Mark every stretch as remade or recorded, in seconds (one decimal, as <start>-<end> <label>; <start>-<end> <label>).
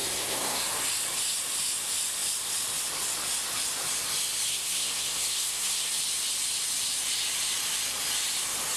0.0-0.6 remade; 0.6-4.5 recorded; 4.5-6.0 remade; 6.0-8.8 recorded